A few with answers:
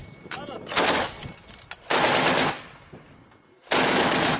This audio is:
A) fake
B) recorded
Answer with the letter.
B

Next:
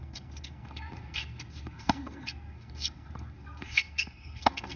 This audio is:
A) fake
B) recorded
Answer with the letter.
A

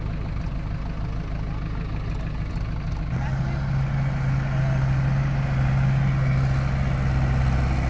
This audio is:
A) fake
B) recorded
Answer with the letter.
B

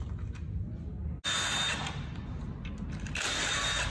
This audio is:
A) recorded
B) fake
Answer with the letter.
A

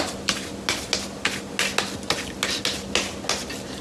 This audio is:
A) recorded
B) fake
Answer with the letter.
A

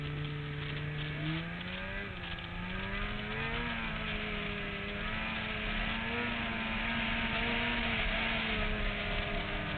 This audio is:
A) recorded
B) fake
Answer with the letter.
A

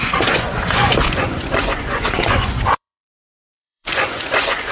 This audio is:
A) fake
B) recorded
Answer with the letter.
A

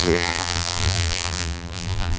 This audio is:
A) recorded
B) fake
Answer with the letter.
B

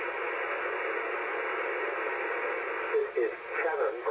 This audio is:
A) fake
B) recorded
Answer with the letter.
B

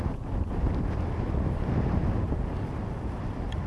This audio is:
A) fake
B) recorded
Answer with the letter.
B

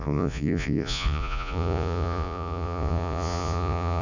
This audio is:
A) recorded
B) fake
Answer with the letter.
B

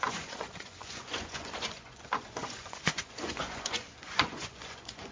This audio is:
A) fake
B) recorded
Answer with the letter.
A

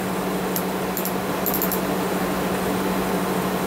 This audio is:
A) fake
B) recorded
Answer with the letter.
B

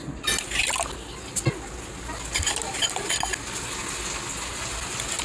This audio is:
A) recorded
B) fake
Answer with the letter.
A